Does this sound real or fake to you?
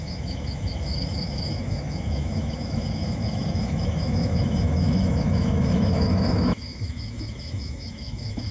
fake